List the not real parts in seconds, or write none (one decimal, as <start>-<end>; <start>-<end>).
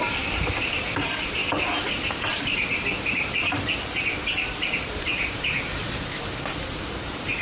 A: 0.0-1.4; 4.3-5.8; 6.5-7.4